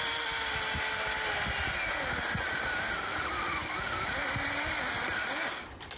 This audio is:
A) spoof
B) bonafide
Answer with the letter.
B